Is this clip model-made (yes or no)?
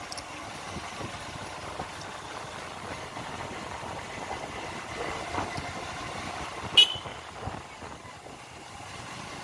no